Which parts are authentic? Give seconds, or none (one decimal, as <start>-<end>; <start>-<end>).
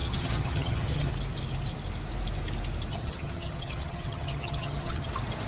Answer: 1.1-2.9; 5.1-5.5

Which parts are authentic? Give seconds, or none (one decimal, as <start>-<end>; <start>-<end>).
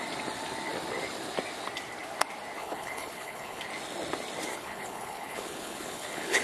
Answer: 0.0-2.6; 3.6-4.5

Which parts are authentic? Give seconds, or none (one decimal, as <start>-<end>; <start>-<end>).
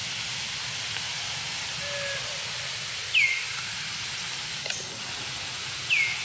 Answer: 0.0-6.2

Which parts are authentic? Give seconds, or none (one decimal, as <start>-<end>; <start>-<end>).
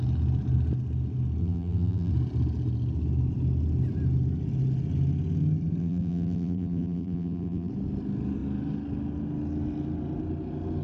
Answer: 0.0-1.4; 2.1-5.8; 7.7-10.8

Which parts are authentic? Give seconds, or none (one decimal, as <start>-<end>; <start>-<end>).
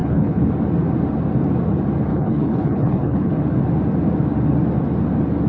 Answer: 0.5-2.1; 3.3-5.5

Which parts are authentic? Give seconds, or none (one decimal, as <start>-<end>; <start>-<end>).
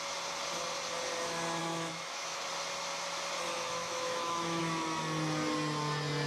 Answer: 0.0-1.6; 2.5-3.5; 4.6-6.3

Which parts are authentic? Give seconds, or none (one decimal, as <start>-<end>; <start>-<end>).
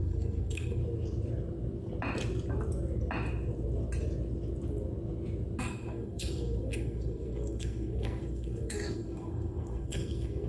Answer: 0.8-5.6